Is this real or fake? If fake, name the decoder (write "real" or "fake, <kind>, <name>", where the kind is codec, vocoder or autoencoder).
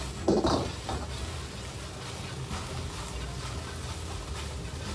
real